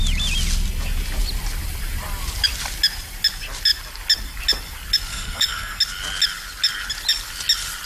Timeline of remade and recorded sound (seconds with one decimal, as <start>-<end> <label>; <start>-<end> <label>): 0.0-5.1 recorded; 5.1-5.8 remade; 5.8-7.9 recorded